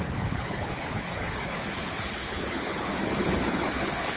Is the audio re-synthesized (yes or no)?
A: yes